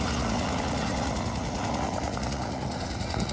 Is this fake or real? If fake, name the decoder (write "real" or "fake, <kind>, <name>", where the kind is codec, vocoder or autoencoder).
fake, vocoder, Vocos